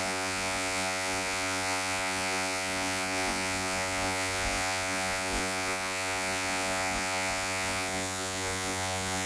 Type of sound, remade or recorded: remade